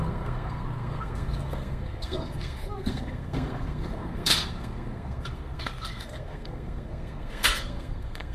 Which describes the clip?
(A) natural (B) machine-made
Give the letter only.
B